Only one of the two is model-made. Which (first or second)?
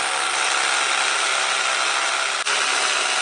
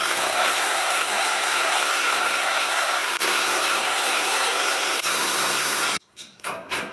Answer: second